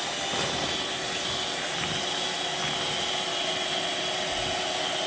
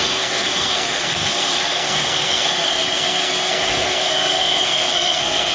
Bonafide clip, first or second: first